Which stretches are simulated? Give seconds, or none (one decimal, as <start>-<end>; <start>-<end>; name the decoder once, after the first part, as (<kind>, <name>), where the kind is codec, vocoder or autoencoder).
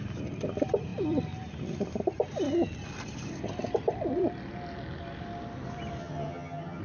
6.0-6.8 (vocoder, HiFi-GAN)